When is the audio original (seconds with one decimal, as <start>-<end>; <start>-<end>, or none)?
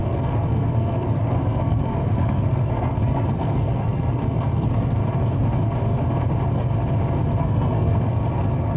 5.0-7.4